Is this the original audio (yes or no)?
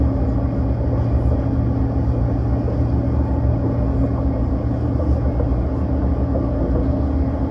yes